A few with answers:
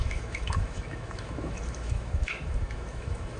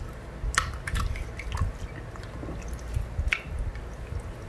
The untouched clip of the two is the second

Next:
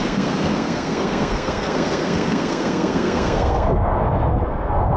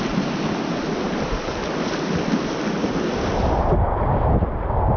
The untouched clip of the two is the second